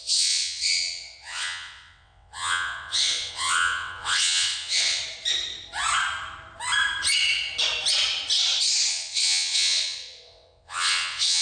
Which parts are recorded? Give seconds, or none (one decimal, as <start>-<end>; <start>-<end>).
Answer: 5.0-8.9